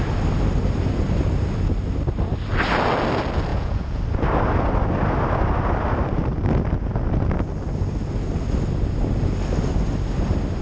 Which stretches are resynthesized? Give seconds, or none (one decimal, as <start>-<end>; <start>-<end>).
3.5-4.0